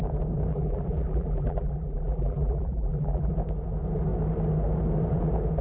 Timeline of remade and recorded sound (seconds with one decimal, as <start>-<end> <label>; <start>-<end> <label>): 0.0-0.5 recorded; 0.5-3.3 remade; 3.3-5.6 recorded